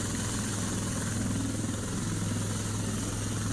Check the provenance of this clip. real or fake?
real